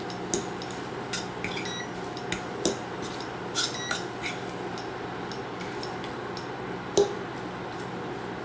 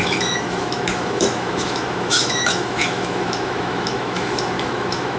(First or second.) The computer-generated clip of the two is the second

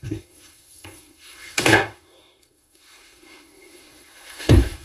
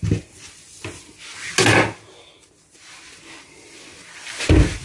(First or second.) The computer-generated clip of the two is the first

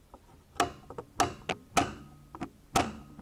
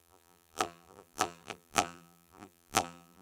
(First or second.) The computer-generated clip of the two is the second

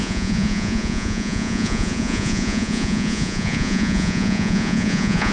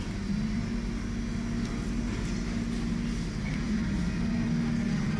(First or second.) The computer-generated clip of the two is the first